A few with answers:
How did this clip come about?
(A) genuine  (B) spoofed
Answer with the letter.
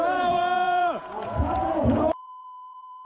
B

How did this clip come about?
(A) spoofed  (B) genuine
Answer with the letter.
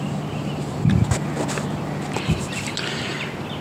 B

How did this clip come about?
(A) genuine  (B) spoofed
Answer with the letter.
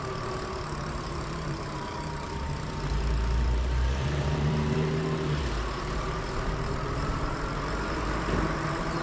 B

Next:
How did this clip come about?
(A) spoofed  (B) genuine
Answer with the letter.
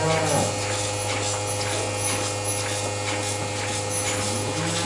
B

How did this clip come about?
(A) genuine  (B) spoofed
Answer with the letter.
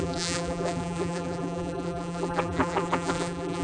B